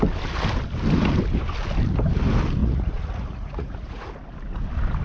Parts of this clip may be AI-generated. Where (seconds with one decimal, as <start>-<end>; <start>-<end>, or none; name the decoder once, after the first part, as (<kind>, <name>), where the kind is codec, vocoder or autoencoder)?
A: 2.6-4.1 (vocoder, Vocos)

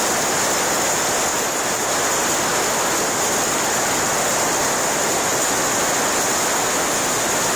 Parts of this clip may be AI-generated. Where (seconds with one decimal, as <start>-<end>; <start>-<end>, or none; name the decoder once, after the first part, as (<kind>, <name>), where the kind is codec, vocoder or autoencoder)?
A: 1.3-1.9 (vocoder, BigVGAN v2)

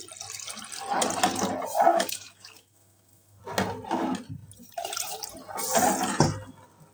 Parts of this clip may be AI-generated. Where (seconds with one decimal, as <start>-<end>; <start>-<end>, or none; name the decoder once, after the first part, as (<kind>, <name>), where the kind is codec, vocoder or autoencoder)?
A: 1.9-3.4 (autoencoder, DAC-VAE)

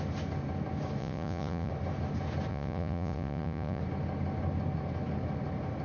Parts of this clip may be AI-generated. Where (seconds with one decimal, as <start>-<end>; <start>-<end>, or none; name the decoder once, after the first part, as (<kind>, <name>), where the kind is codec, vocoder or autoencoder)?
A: 1.0-1.7 (vocoder, Vocos); 2.5-3.8

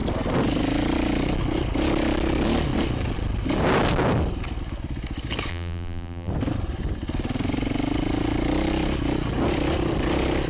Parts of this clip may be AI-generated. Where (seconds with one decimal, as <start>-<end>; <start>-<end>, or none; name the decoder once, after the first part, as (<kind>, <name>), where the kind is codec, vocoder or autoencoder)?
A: 5.5-6.3 (vocoder, BigVGAN v2)

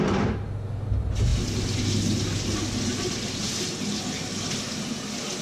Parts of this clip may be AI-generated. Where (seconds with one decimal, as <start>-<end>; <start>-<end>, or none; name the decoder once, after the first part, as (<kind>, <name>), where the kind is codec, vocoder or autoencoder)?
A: none

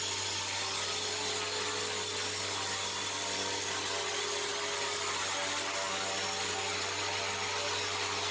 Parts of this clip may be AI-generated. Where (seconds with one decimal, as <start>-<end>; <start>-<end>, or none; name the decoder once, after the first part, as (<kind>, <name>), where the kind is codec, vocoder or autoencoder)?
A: none